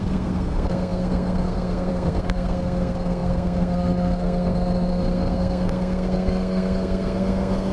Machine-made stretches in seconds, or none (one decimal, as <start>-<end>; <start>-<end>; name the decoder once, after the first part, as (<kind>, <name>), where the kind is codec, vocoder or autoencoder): 0.0-7.7 (codec, SNAC)